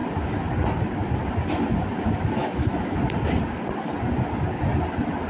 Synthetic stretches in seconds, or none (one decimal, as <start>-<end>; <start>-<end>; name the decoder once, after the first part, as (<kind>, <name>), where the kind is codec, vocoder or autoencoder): 2.4-3.0 (autoencoder, DAC-VAE)